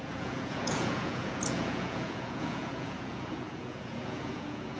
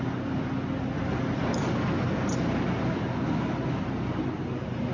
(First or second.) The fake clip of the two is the first